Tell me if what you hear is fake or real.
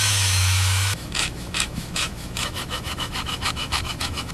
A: fake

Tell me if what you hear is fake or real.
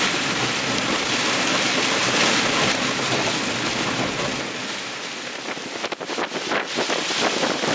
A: real